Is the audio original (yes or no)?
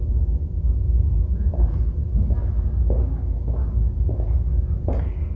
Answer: yes